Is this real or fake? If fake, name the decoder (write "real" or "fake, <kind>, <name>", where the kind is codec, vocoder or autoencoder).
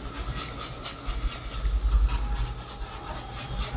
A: real